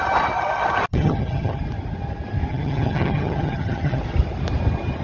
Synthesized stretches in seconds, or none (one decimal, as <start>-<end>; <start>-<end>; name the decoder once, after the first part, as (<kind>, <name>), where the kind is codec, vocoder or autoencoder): 0.9-1.6 (vocoder, HiFi-GAN); 2.5-4.0

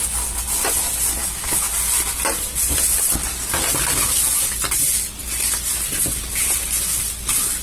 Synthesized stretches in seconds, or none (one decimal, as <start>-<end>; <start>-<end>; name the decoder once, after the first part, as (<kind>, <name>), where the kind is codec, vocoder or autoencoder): 1.2-1.7 (autoencoder, DAC-VAE)

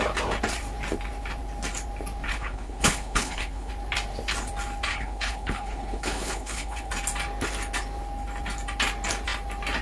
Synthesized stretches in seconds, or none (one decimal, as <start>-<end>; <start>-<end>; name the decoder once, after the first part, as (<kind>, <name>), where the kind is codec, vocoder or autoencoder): 2.3-3.7 (codec, HILCodec); 4.9-6.9

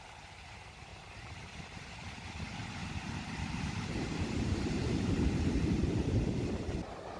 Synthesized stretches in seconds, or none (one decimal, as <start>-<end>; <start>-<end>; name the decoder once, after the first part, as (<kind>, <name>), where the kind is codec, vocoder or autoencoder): 0.9-1.5 (vocoder, BigVGAN v2); 2.8-6.4

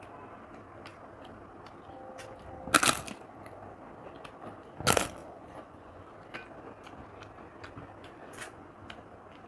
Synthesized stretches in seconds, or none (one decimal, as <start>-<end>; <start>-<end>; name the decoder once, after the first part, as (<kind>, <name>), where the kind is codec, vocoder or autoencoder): 5.2-6.0 (vocoder, Vocos); 8.0-8.7

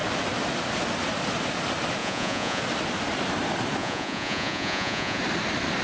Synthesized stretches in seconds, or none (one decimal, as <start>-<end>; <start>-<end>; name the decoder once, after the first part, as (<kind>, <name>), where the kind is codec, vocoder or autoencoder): 2.0-2.6 (vocoder, Vocos); 3.8-5.2

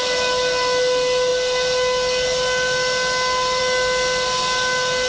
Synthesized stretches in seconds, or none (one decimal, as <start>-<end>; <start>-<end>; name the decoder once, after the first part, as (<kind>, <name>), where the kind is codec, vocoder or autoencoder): none